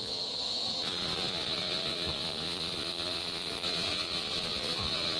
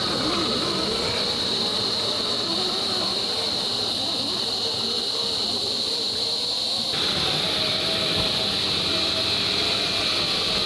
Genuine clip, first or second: second